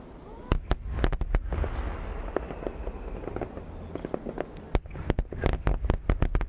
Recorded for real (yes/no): yes